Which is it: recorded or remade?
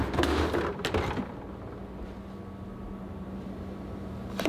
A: recorded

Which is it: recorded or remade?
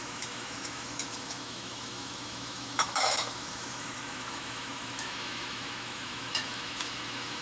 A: remade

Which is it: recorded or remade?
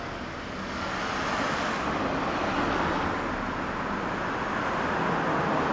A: recorded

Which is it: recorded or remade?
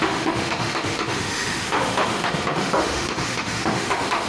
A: remade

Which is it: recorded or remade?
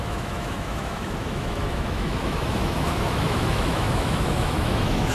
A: remade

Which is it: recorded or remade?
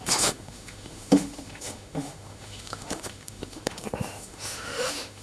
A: remade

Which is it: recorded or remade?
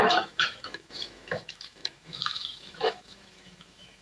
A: remade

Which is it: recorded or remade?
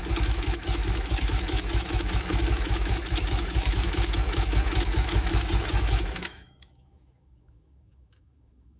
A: remade